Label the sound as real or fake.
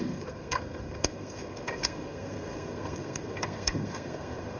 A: fake